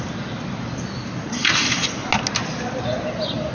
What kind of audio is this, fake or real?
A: real